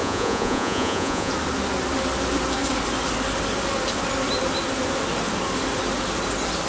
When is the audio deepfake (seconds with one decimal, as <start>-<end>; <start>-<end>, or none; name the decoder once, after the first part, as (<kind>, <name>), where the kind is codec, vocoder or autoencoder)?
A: 0.0-1.3 (vocoder, Vocos)